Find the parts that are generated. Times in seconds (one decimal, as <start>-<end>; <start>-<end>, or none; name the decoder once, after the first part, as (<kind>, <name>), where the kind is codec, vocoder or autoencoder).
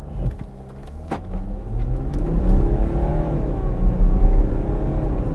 0.8-2.4 (autoencoder, DAC-VAE); 3.1-4.5